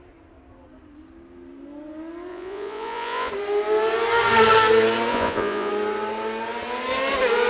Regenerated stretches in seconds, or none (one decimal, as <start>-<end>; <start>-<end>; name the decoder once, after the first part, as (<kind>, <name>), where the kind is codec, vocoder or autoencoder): 2.3-3.3 (vocoder, Vocos); 5.1-5.7